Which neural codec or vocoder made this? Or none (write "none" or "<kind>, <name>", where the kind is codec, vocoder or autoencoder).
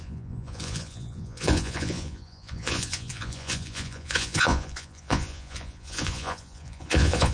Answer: vocoder, Vocos